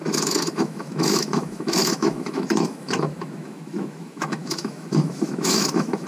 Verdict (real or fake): fake